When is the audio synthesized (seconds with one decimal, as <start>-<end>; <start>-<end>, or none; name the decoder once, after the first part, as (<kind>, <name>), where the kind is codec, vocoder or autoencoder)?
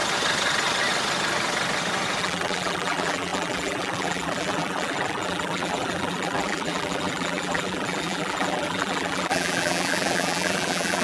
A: 2.2-11.0 (vocoder, BigVGAN v2)